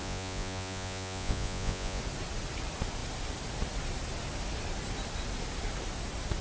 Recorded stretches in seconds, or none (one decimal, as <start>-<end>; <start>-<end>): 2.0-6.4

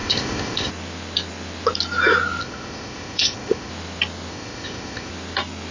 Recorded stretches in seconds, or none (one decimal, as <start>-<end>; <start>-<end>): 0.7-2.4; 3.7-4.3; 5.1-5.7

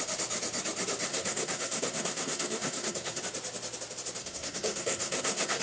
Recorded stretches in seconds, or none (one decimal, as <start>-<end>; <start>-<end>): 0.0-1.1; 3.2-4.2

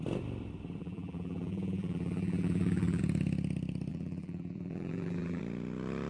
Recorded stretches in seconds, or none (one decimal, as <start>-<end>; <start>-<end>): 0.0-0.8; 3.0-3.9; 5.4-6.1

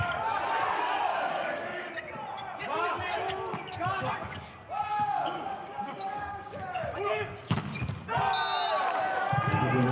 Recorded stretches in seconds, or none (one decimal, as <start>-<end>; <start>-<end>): 0.0-1.1; 1.9-4.9; 7.7-9.9